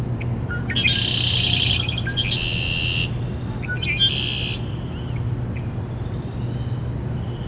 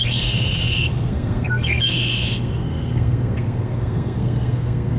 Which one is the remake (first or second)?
second